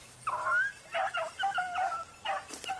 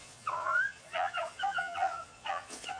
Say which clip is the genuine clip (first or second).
first